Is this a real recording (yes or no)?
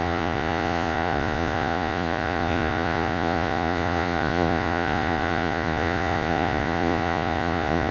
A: no